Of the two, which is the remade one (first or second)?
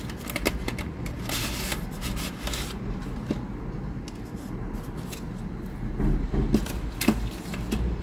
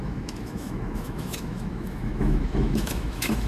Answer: second